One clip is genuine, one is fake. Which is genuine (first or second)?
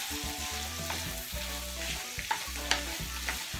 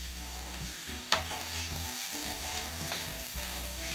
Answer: first